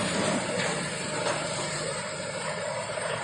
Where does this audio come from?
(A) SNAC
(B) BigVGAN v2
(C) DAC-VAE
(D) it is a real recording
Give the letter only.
B